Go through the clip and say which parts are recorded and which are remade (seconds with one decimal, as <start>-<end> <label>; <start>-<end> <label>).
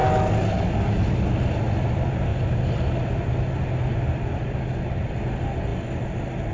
0.0-2.3 recorded; 2.3-3.3 remade; 3.3-6.5 recorded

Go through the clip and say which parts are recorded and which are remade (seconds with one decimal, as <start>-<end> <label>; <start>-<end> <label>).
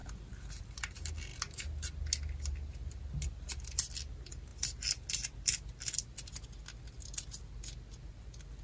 0.0-8.6 recorded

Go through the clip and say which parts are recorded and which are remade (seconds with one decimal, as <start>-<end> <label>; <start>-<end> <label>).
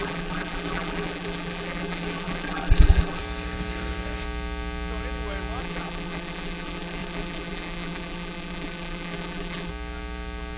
0.0-3.2 remade; 3.2-5.6 recorded; 5.6-9.7 remade; 9.7-10.6 recorded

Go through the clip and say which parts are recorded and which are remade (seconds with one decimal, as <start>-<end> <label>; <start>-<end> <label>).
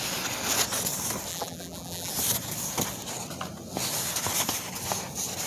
0.0-1.3 recorded; 1.3-2.1 remade; 2.1-5.5 recorded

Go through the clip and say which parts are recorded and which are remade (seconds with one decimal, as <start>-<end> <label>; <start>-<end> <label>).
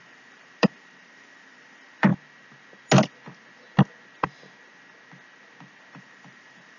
0.0-2.1 remade; 2.1-6.0 recorded; 6.0-6.8 remade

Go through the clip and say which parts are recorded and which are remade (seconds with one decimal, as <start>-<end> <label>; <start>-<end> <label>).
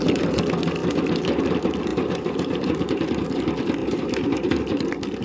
0.0-1.9 recorded; 1.9-3.4 remade; 3.4-3.8 recorded; 3.8-4.5 remade; 4.5-5.2 recorded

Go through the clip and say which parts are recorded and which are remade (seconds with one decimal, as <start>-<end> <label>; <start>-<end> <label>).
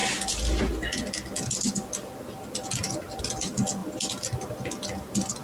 0.0-5.4 recorded